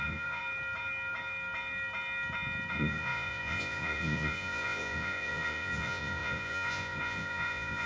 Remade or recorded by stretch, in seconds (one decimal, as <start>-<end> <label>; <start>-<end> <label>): 0.0-0.4 remade; 0.4-2.7 recorded; 2.7-7.9 remade